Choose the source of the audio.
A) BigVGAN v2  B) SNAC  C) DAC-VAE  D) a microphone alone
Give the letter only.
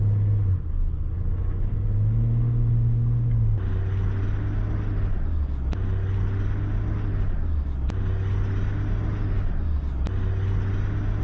D